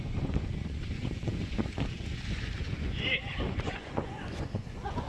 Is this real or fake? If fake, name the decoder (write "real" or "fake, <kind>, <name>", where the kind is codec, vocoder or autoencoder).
fake, vocoder, Vocos